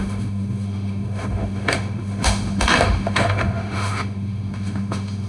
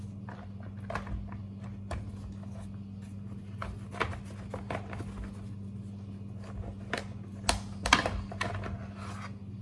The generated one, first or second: first